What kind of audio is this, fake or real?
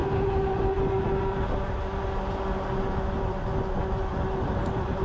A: real